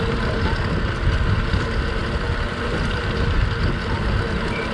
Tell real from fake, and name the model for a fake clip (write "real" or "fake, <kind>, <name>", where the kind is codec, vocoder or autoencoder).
real